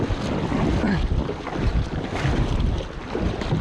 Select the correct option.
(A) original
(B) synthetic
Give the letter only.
A